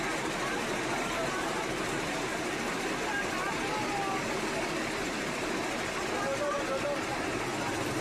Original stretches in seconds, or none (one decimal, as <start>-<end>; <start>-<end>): 0.0-2.3; 3.0-8.0